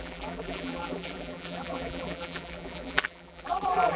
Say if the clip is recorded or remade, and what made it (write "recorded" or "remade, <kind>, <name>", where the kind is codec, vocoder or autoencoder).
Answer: remade, vocoder, BigVGAN v2